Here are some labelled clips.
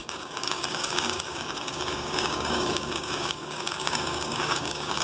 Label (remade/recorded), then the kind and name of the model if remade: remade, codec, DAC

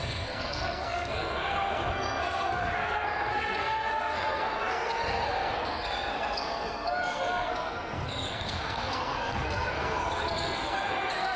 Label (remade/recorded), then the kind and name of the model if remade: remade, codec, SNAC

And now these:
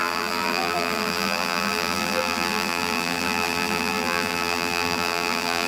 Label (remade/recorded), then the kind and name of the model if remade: remade, vocoder, BigVGAN v2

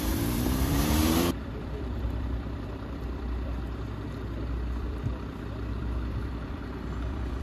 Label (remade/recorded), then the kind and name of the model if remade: remade, vocoder, BigVGAN v2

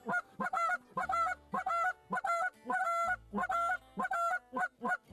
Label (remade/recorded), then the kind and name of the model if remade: recorded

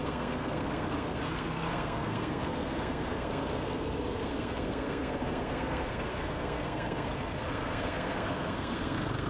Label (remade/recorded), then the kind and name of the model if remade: remade, codec, SNAC